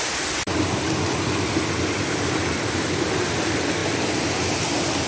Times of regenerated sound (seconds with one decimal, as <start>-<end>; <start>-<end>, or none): none

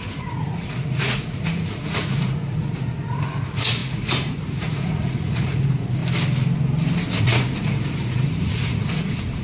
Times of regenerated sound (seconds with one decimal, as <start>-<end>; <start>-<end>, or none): 0.0-6.0; 7.2-9.4

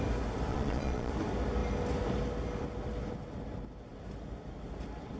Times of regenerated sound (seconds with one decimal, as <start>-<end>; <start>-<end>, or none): 0.5-1.1

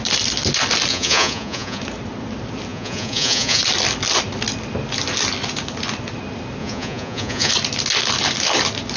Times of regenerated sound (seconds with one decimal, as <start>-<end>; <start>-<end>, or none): 0.9-1.8; 2.7-3.6; 6.6-7.5

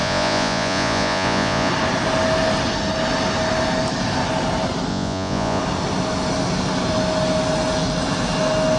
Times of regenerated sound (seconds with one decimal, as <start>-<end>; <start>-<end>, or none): 0.0-1.7; 4.9-5.6